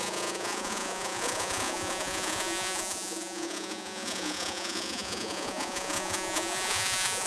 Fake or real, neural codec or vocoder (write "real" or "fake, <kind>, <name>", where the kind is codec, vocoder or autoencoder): fake, vocoder, Vocos